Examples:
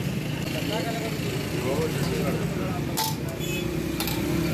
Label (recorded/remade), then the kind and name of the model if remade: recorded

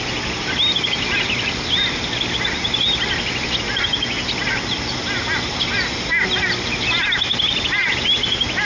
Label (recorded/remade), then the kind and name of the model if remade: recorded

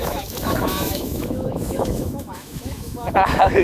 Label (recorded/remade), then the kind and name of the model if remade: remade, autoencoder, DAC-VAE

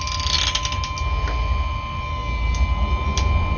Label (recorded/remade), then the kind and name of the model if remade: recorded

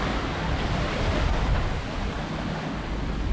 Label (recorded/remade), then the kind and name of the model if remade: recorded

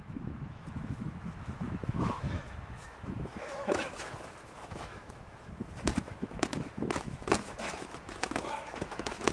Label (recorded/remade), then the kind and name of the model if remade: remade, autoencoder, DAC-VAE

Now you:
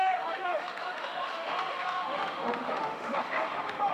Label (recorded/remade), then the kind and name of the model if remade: remade, autoencoder, DAC-VAE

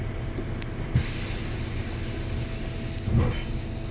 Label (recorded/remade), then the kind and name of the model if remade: recorded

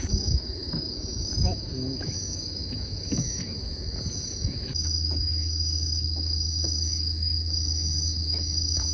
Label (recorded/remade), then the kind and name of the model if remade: remade, autoencoder, DAC-VAE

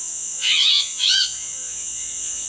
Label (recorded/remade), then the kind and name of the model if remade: remade, vocoder, Vocos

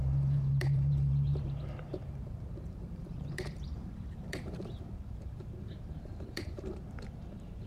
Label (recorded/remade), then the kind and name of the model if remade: remade, vocoder, BigVGAN v2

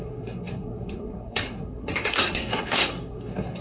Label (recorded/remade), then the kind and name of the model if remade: remade, codec, SNAC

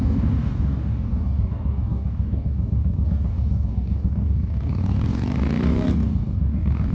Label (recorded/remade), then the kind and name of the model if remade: remade, codec, DAC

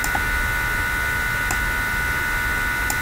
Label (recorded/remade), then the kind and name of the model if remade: recorded